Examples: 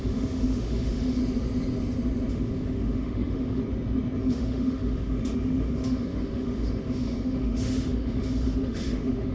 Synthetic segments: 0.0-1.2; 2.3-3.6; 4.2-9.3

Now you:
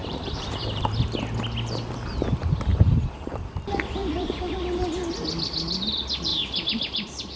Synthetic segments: 0.0-0.8; 4.0-4.5; 6.3-7.4